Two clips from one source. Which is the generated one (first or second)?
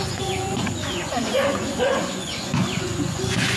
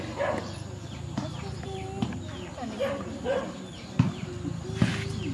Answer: first